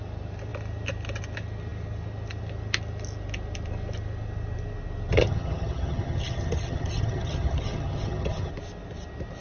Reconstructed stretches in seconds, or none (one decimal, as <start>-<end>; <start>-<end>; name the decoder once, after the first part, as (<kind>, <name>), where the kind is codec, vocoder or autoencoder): 5.1-8.5 (vocoder, HiFi-GAN)